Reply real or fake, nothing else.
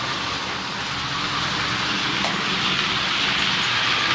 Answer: real